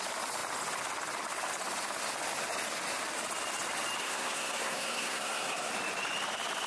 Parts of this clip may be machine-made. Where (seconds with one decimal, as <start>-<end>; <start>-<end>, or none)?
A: 4.0-5.7